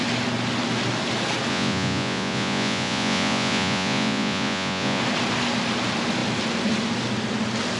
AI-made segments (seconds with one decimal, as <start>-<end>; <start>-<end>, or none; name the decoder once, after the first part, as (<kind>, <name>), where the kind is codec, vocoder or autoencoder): 1.5-5.0 (vocoder, Vocos)